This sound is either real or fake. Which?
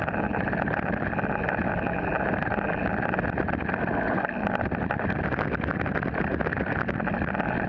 real